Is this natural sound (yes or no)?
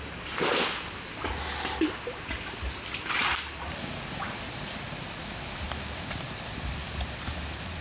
yes